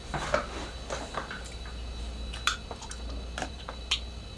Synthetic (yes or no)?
no